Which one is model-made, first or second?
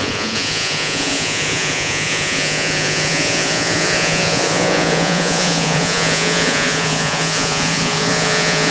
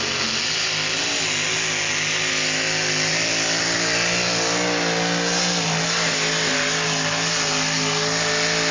first